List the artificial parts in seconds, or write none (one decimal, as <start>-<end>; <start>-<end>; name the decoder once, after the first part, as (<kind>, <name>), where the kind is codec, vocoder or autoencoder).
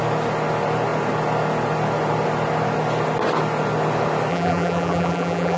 4.3-5.6 (vocoder, BigVGAN v2)